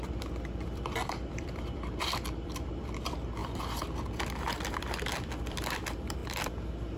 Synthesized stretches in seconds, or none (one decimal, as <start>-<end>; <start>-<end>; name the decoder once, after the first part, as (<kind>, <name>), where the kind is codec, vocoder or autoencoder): 0.0-7.0 (vocoder, BigVGAN v2)